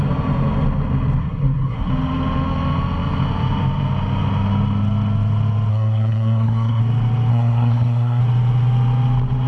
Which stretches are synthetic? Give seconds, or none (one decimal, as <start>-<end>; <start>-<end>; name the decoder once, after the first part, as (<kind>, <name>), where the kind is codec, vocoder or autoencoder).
1.2-1.9 (codec, SNAC); 5.7-6.8; 7.3-8.2